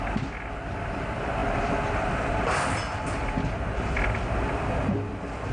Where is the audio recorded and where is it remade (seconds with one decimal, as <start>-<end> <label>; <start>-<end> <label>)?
0.0-5.5 recorded